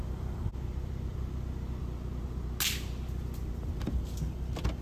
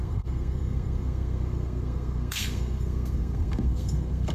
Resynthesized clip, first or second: second